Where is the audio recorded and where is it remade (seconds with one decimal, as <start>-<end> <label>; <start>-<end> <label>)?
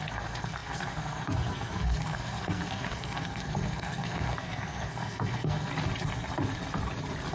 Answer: 0.0-5.7 remade; 5.7-7.3 recorded